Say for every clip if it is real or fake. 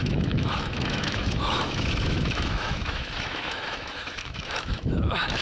fake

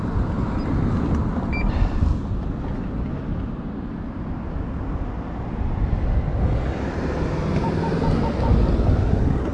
real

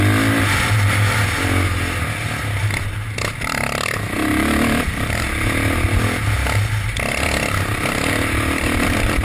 real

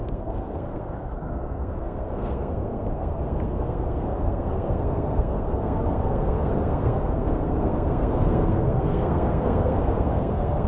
fake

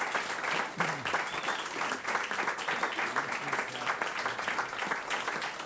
real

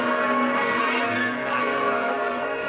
fake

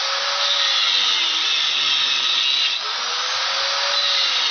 real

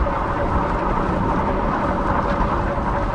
real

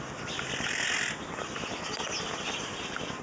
real